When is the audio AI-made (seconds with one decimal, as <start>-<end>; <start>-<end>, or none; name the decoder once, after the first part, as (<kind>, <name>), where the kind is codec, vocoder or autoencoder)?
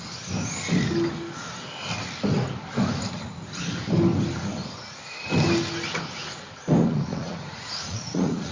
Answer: 6.8-8.5 (vocoder, Vocos)